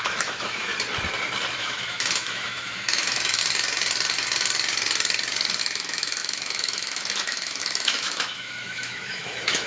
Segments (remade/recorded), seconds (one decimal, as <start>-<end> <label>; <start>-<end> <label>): 0.0-0.7 remade; 0.7-1.5 recorded; 1.5-3.4 remade; 3.4-5.6 recorded; 5.6-9.7 remade